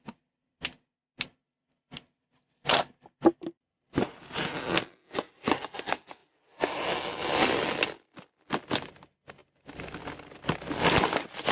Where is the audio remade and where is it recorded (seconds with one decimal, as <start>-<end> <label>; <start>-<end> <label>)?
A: 0.0-11.5 recorded